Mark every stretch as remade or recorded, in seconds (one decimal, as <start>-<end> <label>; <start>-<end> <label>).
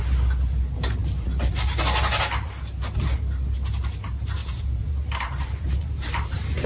0.0-1.0 recorded; 1.0-1.8 remade; 1.8-4.4 recorded; 4.4-6.7 remade